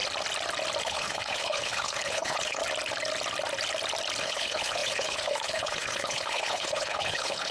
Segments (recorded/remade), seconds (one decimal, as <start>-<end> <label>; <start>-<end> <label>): 0.0-0.8 recorded; 0.8-2.6 remade; 2.6-4.2 recorded; 4.2-7.5 remade